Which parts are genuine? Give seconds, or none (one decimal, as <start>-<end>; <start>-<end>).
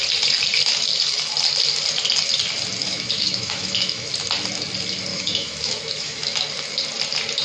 0.0-2.8; 4.1-5.1; 6.4-7.4